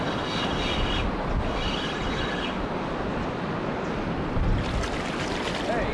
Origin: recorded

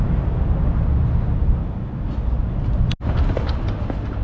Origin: recorded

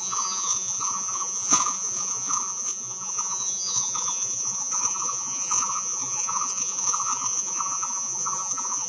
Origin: remade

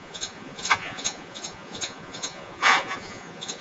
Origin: remade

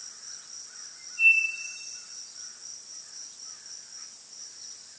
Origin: recorded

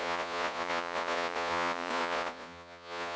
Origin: remade